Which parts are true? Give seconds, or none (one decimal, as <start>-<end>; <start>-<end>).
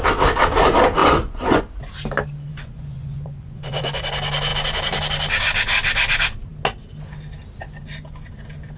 0.0-1.0; 1.6-2.5; 4.1-8.8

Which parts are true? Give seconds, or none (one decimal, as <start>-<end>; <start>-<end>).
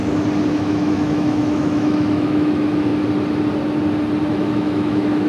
0.0-0.5; 2.9-4.3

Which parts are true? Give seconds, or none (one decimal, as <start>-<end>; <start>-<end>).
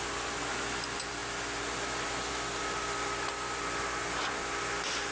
0.0-5.1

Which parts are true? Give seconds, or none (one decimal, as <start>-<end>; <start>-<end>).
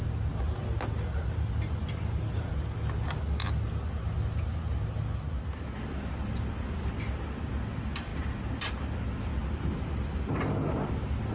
0.0-11.3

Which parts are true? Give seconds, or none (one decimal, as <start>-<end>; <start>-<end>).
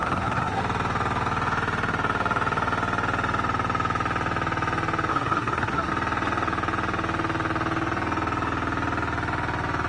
0.6-5.1; 5.9-9.9